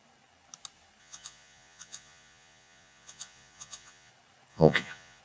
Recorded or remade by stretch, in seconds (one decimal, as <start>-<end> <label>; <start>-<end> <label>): 0.0-1.0 recorded; 1.0-4.1 remade; 4.1-4.5 recorded; 4.5-5.2 remade